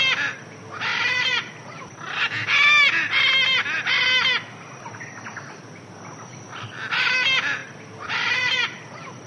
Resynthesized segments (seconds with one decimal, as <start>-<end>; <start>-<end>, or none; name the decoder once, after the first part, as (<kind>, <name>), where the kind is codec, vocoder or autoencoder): 0.9-1.5 (vocoder, BigVGAN v2); 7.6-8.8